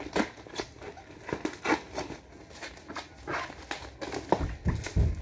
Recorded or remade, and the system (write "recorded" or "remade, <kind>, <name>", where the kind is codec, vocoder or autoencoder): recorded